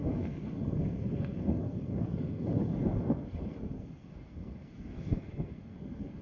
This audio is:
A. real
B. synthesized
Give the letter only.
B